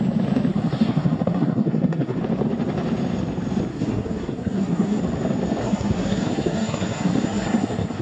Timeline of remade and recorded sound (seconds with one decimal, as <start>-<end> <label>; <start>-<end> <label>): 0.0-0.5 recorded; 0.5-2.2 remade; 2.2-3.7 recorded; 3.7-5.0 remade; 5.0-5.6 recorded; 5.6-8.0 remade